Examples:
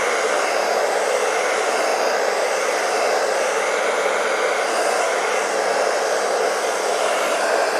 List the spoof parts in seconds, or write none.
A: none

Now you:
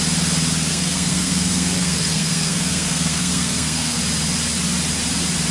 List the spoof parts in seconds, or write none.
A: 0.7-4.0 (codec, SNAC)